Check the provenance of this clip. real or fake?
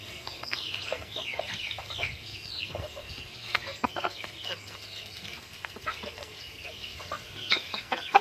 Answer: fake